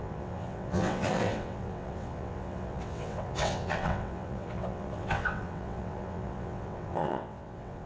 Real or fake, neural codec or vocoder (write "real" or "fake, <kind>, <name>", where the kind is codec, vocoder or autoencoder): fake, vocoder, WaveNeXt